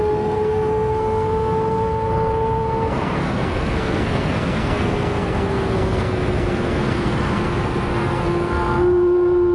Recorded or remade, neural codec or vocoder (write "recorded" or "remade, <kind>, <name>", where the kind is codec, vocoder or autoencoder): remade, codec, SNAC